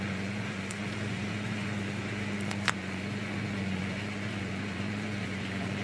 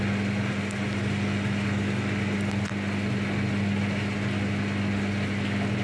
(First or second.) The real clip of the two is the second